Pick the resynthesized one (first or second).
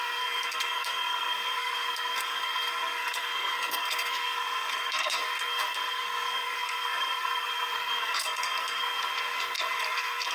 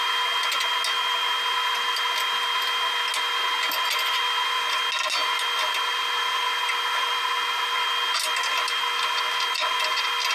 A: first